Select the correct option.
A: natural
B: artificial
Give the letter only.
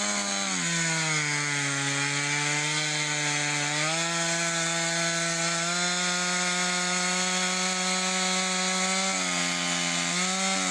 A